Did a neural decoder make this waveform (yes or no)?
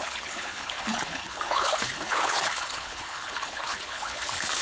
yes